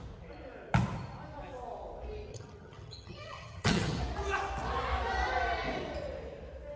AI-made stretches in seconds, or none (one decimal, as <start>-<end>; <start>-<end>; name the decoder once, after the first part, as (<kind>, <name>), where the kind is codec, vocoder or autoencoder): 2.3-4.0 (vocoder, HiFi-GAN)